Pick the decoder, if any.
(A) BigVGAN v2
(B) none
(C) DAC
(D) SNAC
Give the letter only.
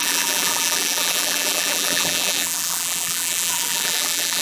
A